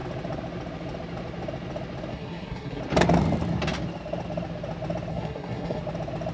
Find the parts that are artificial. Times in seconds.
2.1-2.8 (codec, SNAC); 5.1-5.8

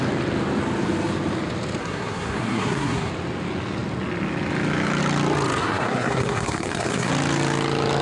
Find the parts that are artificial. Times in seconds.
1.8-3.1 (codec, SNAC); 5.6-7.1

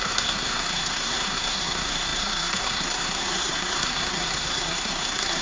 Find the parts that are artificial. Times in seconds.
0.0-5.4 (codec, SNAC)